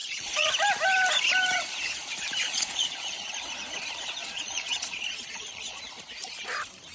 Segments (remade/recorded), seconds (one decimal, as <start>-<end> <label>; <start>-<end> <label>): 0.0-0.5 remade; 0.5-2.5 recorded; 2.5-3.3 remade; 3.3-4.2 recorded; 4.2-5.8 remade; 5.8-6.9 recorded